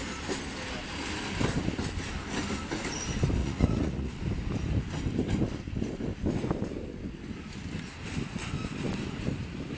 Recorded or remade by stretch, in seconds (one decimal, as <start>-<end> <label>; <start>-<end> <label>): 0.0-3.4 recorded; 3.4-4.1 remade; 4.1-9.8 recorded